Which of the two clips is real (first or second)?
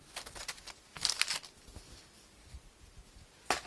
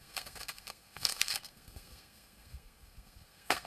first